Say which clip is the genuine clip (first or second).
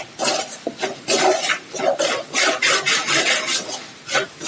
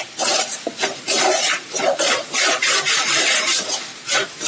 first